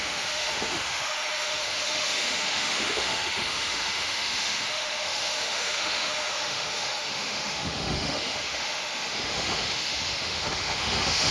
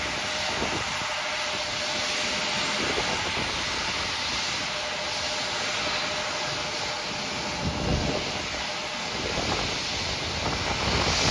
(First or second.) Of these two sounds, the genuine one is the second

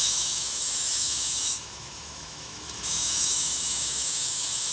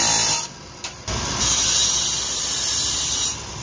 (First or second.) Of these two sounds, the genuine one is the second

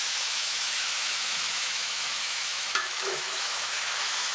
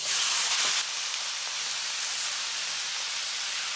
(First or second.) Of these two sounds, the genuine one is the second